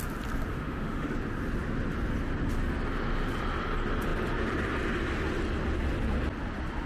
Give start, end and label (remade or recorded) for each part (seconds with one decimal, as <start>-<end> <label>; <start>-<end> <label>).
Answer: 0.0-0.5 recorded; 0.5-1.1 remade; 1.1-6.9 recorded